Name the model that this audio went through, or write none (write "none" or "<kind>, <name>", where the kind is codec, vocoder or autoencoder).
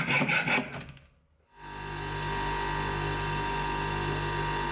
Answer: none